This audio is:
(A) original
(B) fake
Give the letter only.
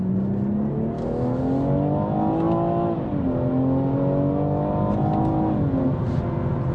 A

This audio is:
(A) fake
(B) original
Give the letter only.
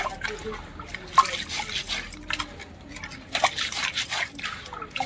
B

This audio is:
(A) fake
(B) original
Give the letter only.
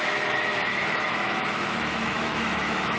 A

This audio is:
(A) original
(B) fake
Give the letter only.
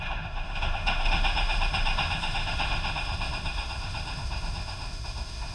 B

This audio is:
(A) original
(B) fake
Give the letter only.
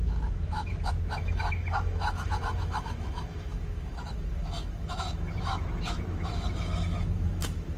B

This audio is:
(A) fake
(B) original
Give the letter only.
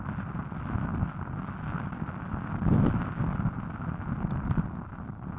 B